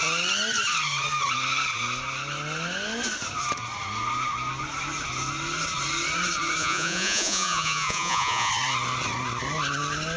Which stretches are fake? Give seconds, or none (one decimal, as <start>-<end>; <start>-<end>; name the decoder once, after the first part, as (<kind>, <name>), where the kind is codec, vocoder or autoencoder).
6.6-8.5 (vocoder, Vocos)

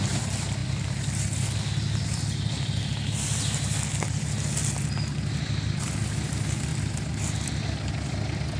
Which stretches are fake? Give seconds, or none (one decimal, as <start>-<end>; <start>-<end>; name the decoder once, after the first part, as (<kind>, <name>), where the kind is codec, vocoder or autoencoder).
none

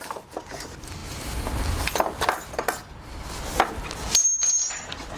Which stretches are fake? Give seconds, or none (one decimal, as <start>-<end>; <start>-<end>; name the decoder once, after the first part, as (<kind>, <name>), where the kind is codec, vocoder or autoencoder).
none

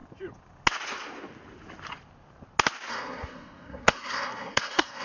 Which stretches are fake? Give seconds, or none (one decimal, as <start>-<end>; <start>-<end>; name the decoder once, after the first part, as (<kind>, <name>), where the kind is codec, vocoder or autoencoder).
2.9-5.0 (codec, SNAC)

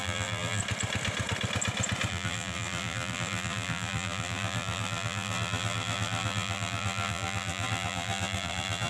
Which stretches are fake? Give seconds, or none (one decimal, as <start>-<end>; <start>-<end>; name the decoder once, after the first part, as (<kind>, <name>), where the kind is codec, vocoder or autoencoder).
0.0-0.6 (vocoder, BigVGAN v2); 2.1-8.9

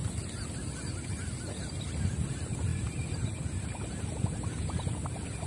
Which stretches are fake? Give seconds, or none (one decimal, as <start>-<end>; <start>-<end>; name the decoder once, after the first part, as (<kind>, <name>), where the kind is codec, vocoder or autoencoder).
none